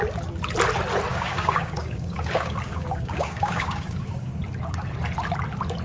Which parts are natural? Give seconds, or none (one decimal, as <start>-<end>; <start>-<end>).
0.0-1.1; 4.4-5.8